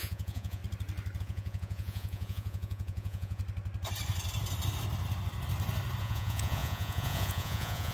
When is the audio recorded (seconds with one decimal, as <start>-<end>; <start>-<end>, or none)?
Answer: 0.6-1.2; 3.4-6.0